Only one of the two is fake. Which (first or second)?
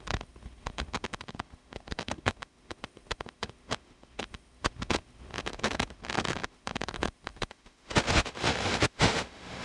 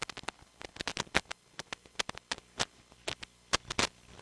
first